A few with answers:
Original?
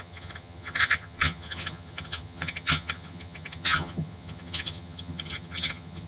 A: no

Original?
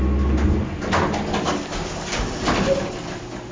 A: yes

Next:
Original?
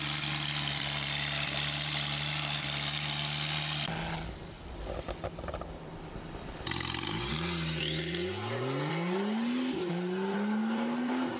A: yes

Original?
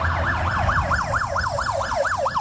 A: no